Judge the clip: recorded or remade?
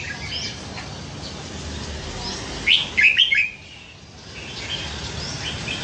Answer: recorded